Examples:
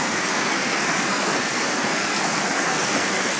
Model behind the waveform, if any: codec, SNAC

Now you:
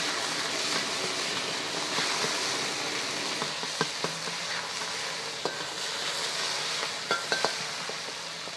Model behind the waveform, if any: none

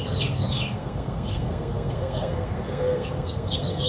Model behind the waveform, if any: codec, SNAC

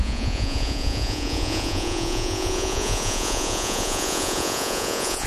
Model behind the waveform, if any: vocoder, Vocos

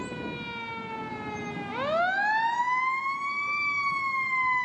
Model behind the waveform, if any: none